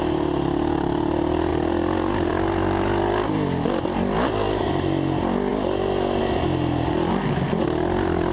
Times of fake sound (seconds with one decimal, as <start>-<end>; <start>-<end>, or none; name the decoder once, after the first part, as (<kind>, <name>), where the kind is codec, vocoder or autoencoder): none